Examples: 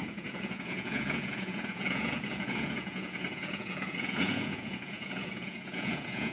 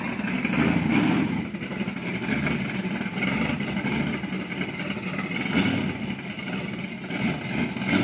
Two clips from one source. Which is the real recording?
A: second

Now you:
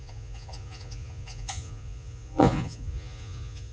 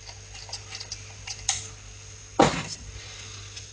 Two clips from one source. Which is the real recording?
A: second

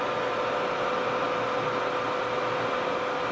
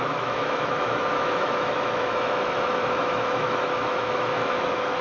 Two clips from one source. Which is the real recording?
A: first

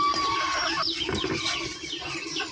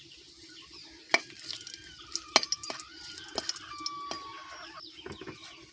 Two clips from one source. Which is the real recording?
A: second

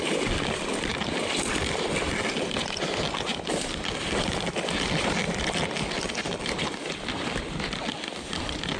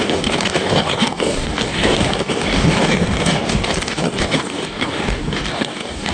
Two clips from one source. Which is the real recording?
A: first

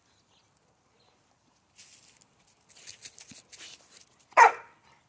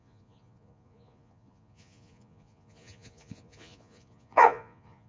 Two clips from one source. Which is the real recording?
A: first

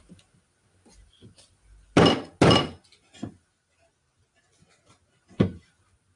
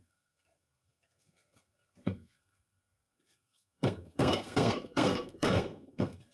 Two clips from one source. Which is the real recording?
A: first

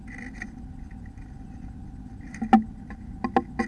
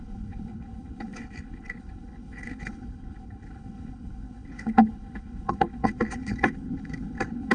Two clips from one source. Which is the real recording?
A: first